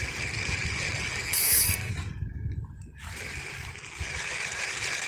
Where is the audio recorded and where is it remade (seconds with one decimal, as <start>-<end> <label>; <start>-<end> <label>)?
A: 0.0-1.2 recorded; 1.2-1.9 remade; 1.9-5.1 recorded